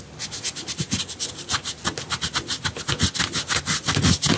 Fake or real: real